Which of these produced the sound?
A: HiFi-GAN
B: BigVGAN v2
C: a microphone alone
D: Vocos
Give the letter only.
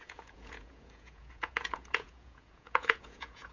D